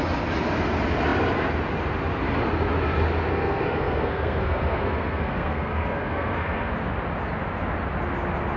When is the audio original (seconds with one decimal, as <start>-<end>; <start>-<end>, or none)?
0.0-3.3; 6.7-8.6